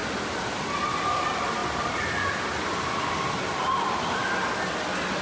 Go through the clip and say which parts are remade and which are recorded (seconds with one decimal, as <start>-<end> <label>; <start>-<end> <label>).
0.0-0.9 remade; 0.9-1.6 recorded; 1.6-3.1 remade; 3.1-5.2 recorded